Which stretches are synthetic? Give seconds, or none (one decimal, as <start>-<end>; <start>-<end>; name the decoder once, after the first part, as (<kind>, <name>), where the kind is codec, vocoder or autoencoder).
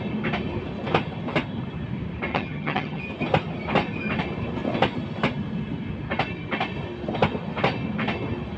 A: 2.3-3.0 (vocoder, HiFi-GAN)